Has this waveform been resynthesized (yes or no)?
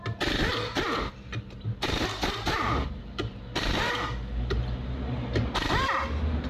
no